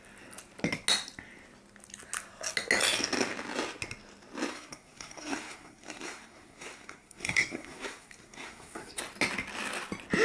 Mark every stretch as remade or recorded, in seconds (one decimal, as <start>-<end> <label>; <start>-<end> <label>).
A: 0.0-4.5 recorded; 4.5-9.0 remade; 9.0-10.2 recorded